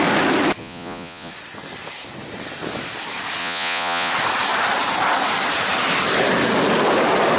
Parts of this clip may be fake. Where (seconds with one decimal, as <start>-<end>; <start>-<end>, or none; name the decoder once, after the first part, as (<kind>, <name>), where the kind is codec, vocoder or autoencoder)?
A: 0.6-1.3 (vocoder, Vocos); 3.4-4.1